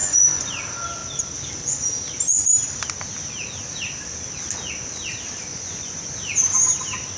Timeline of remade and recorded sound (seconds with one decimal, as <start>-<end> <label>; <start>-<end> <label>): 0.0-0.5 remade; 0.5-5.5 recorded; 5.5-6.1 remade; 6.1-7.2 recorded